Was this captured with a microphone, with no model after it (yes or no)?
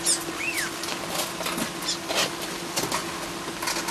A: yes